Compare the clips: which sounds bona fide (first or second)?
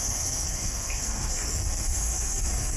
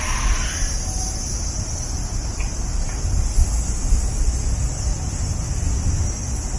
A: second